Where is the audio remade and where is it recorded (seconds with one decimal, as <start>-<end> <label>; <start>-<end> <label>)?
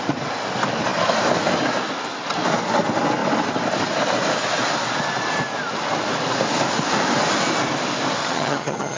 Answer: 0.0-8.2 recorded; 8.2-9.0 remade